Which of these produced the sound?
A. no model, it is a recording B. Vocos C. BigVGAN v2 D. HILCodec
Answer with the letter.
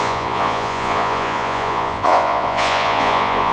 B